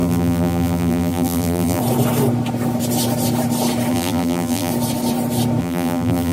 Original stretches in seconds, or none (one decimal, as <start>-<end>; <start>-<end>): 1.8-3.9; 4.7-5.6